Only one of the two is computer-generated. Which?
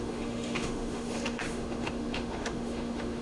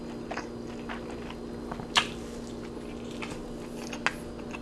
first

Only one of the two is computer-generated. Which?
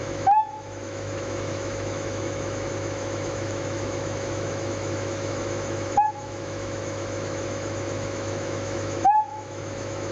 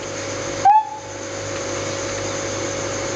first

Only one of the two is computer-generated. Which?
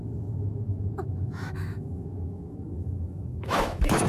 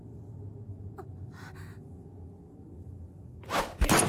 first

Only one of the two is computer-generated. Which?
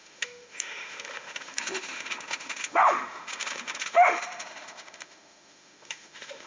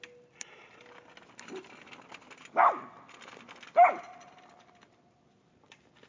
first